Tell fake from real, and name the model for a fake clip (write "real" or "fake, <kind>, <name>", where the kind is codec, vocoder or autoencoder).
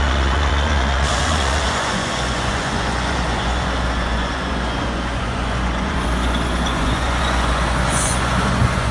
fake, vocoder, Vocos